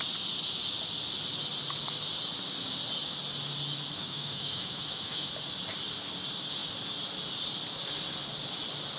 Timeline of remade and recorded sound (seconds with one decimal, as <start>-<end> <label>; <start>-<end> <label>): 0.0-4.0 recorded; 4.0-5.3 remade; 5.3-9.0 recorded

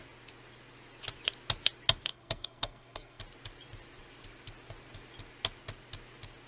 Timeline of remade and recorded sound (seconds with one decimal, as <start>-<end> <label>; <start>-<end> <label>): 0.0-2.1 recorded; 2.1-3.2 remade; 3.2-6.5 recorded

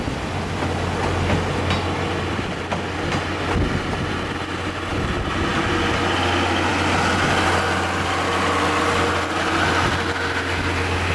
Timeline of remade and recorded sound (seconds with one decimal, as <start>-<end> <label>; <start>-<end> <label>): 0.0-11.1 recorded

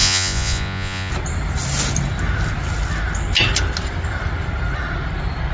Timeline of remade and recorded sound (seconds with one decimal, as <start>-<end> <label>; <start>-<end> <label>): 0.0-1.1 remade; 1.1-5.5 recorded

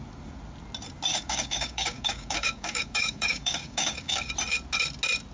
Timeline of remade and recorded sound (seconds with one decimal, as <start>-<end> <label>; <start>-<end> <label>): 0.0-1.1 recorded; 1.1-4.3 remade; 4.3-5.3 recorded

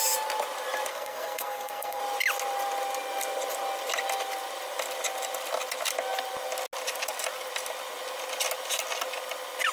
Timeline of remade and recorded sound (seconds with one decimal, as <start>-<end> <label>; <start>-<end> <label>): 0.0-0.9 recorded; 0.9-2.0 remade; 2.0-9.7 recorded